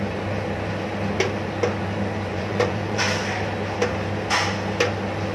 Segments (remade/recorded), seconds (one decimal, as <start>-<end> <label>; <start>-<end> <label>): 0.0-2.3 recorded; 2.3-3.0 remade; 3.0-5.3 recorded

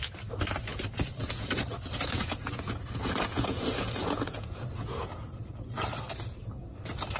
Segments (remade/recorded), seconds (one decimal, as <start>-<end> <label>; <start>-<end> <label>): 0.0-0.7 recorded; 0.7-5.0 remade; 5.0-7.2 recorded

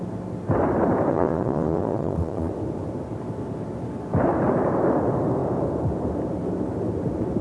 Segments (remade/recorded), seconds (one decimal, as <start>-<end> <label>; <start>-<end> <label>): 0.0-1.1 recorded; 1.1-2.5 remade; 2.5-7.4 recorded

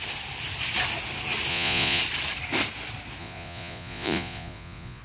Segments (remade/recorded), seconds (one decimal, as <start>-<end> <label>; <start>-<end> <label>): 0.0-1.5 recorded; 1.5-2.0 remade; 2.0-3.2 recorded; 3.2-5.0 remade

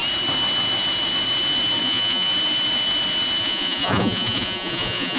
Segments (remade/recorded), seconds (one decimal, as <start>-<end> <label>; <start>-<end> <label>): 0.0-1.8 recorded; 1.8-2.3 remade; 2.3-3.4 recorded; 3.4-5.2 remade

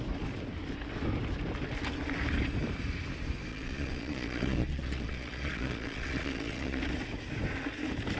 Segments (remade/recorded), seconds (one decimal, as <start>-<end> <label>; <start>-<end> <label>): 0.0-3.5 recorded; 3.5-6.8 remade; 6.8-8.2 recorded